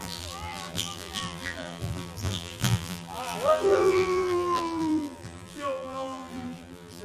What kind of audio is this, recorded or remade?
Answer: remade